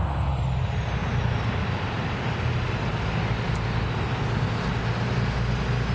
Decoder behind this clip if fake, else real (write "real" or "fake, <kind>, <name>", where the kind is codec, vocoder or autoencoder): real